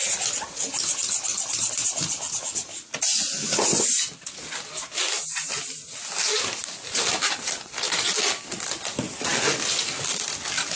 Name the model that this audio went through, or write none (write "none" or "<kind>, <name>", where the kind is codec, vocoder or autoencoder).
none